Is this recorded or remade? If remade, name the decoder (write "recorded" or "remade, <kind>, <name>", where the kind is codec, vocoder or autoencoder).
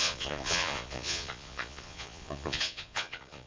remade, vocoder, Vocos